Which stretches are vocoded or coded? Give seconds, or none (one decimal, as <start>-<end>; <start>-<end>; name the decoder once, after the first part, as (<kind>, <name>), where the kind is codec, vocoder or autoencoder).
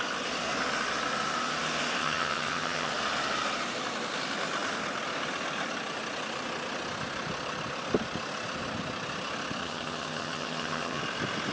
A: 2.0-2.9 (vocoder, HiFi-GAN); 9.6-11.0